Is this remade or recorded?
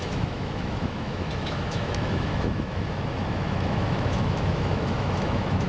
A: remade